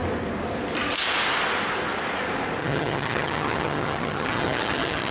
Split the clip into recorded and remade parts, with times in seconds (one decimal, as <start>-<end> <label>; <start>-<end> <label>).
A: 0.0-2.6 recorded; 2.6-5.1 remade